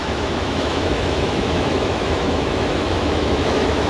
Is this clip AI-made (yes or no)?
yes